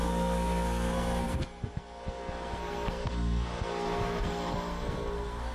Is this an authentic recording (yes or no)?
no